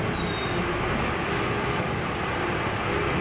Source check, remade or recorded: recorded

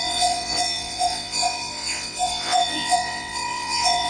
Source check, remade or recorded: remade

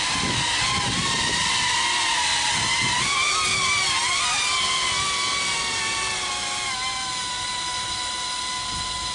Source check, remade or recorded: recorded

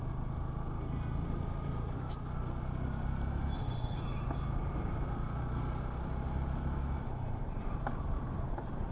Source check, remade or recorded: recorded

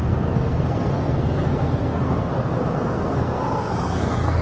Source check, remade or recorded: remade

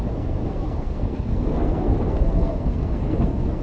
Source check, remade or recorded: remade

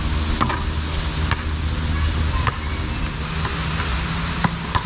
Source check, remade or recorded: recorded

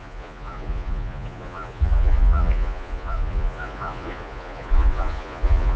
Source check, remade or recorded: remade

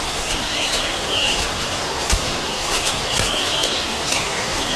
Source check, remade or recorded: remade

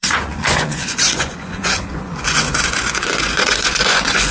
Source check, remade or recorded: remade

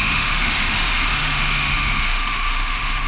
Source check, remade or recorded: remade